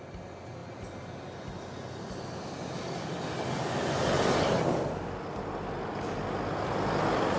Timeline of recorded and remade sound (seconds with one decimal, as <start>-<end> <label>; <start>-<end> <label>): 0.0-7.4 recorded